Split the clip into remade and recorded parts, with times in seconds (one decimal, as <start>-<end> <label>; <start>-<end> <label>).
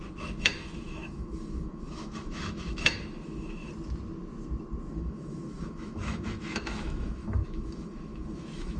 0.0-3.7 remade; 3.7-4.9 recorded; 4.9-8.8 remade